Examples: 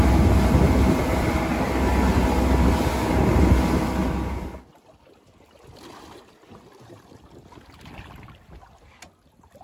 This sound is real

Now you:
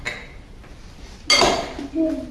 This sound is real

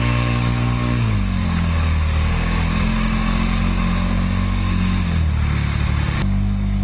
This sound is fake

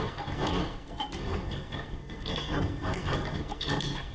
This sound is fake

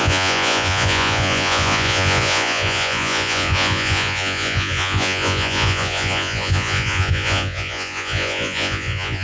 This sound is fake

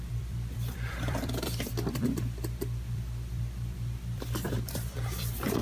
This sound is fake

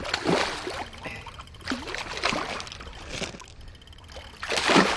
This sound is real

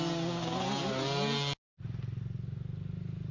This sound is real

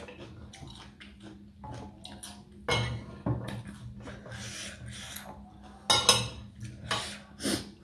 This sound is real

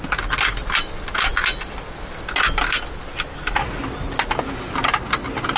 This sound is real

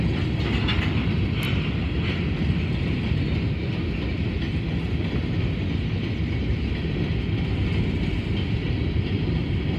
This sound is real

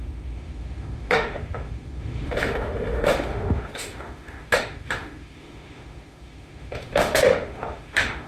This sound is fake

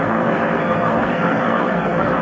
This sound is fake